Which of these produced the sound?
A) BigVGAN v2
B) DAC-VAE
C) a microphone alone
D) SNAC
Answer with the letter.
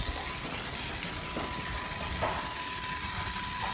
C